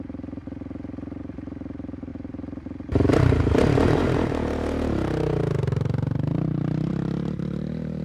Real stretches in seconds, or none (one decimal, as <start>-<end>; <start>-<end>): 0.4-1.2